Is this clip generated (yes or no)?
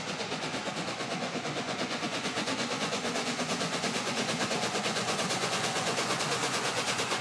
yes